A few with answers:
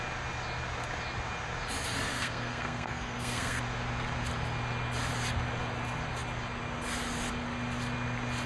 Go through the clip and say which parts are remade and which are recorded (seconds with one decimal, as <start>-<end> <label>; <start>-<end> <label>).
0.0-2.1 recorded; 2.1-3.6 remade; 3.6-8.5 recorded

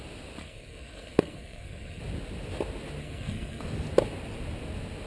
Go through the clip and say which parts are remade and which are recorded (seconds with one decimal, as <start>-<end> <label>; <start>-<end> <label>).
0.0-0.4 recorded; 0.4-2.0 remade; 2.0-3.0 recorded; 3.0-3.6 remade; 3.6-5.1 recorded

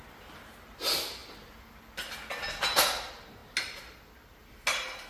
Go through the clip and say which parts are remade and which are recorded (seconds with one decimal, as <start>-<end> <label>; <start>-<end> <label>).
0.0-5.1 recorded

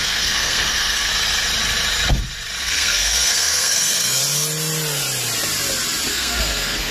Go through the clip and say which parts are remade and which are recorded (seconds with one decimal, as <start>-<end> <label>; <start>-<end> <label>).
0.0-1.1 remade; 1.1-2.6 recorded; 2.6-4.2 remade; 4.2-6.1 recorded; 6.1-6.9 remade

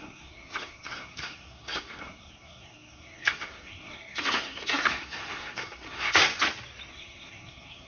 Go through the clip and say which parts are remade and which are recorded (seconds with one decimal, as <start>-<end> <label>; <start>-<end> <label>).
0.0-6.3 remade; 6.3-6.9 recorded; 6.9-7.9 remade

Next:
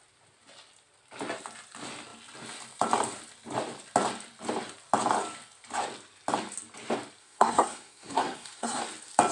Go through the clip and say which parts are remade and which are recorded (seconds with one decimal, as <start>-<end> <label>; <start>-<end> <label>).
0.0-7.2 recorded; 7.2-8.8 remade; 8.8-9.3 recorded

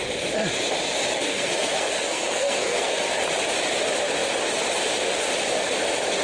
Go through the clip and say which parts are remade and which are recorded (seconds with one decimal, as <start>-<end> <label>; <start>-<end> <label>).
0.0-1.1 recorded; 1.1-3.1 remade; 3.1-6.2 recorded